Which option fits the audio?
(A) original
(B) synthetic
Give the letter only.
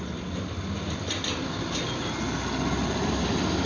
B